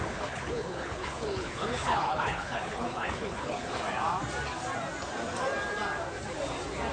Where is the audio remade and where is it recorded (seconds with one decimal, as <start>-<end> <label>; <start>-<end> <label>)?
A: 0.0-3.8 remade; 3.8-6.9 recorded